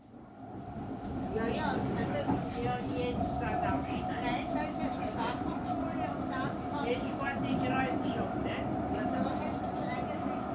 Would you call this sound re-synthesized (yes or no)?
no